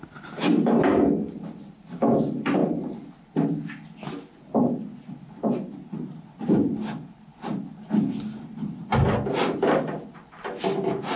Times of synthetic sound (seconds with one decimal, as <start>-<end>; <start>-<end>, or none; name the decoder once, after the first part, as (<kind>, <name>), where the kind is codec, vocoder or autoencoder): none